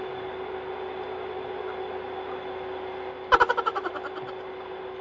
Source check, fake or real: real